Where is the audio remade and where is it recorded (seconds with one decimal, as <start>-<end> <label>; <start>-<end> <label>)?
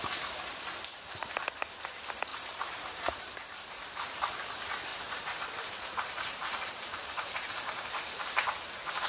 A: 0.0-2.3 recorded; 2.3-4.0 remade; 4.0-4.9 recorded; 4.9-9.1 remade